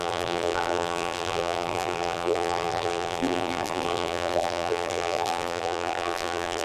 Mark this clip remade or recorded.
remade